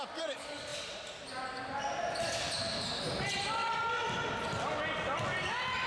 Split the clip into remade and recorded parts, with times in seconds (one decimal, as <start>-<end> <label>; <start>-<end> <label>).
0.0-5.9 recorded